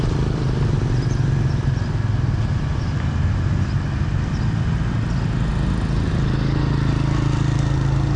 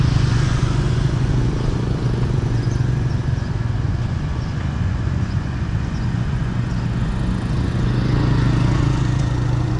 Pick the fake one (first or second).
second